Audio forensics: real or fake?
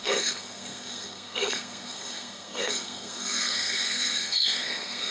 fake